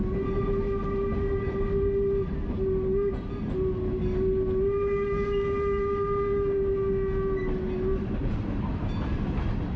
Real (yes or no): yes